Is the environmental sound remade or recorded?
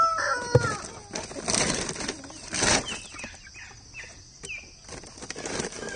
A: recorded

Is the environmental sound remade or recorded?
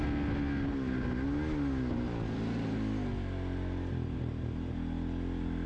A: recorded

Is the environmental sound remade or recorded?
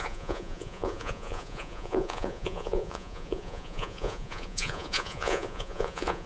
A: remade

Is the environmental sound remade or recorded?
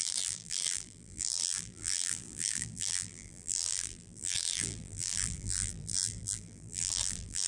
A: remade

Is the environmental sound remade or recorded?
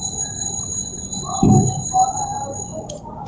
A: recorded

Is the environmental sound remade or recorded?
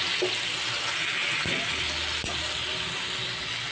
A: recorded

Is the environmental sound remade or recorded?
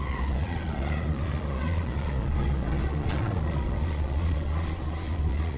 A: remade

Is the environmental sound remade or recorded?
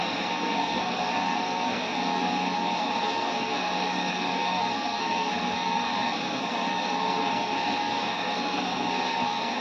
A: remade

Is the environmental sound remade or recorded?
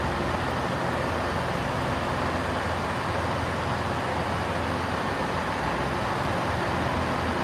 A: recorded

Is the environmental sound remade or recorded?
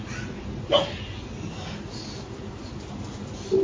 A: recorded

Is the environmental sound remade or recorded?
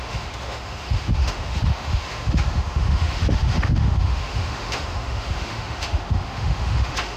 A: remade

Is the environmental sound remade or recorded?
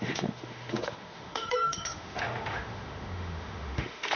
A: remade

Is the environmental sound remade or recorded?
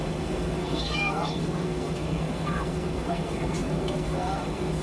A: remade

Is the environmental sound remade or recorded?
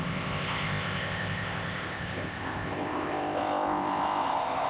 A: remade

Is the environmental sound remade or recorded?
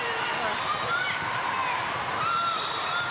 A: recorded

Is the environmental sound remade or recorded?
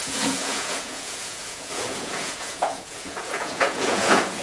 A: remade